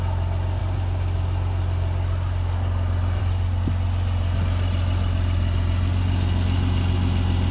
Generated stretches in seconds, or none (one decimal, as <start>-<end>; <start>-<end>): none